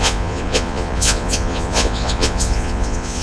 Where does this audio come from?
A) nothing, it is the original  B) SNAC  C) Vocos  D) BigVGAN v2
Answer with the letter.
C